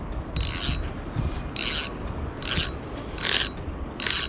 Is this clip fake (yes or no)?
no